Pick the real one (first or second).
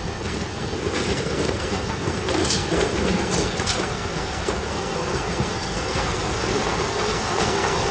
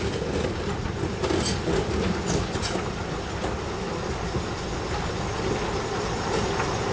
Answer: second